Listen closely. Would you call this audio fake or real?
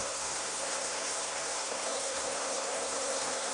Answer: fake